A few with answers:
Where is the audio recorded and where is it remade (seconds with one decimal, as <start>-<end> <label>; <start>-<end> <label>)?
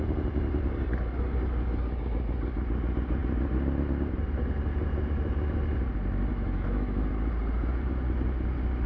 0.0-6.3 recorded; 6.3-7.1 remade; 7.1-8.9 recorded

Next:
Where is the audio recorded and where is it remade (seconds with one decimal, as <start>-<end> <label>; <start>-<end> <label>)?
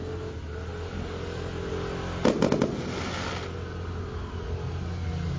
0.0-5.4 recorded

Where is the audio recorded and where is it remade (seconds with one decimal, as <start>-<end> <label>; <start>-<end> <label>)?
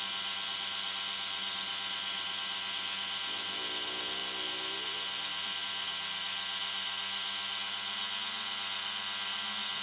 0.0-9.8 recorded